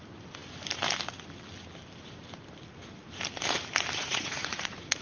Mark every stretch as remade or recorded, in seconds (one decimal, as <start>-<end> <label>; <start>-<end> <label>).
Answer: 0.0-4.0 recorded; 4.0-5.0 remade